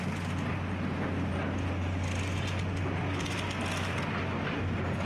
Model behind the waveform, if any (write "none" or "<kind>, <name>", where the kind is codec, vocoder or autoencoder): none